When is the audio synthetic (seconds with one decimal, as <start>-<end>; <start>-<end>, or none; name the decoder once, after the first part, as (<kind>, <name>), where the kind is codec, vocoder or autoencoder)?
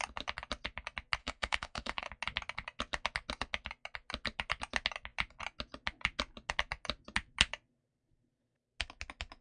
1.2-2.1 (autoencoder, DAC-VAE)